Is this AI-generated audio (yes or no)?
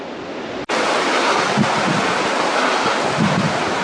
no